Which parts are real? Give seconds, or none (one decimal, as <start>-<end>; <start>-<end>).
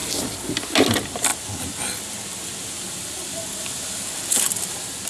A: 0.0-5.1